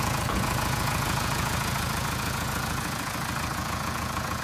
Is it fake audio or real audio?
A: fake